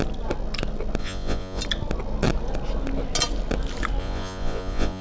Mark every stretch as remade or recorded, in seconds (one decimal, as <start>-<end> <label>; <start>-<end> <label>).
0.0-1.0 recorded; 1.0-1.6 remade; 1.6-4.0 recorded; 4.0-5.0 remade